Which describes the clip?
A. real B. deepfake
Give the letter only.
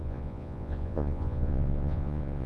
B